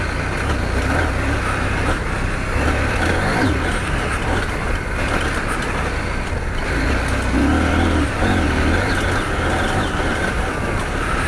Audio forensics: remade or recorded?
recorded